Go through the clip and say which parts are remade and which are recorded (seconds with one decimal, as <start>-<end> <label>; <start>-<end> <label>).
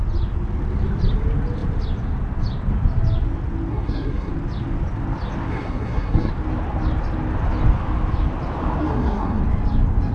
0.0-3.7 recorded; 3.7-4.3 remade; 4.3-5.5 recorded; 5.5-6.3 remade; 6.3-8.8 recorded; 8.8-9.4 remade; 9.4-10.1 recorded